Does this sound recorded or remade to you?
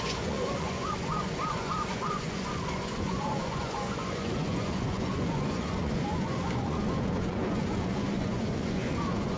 remade